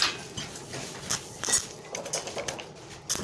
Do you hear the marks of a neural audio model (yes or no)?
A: no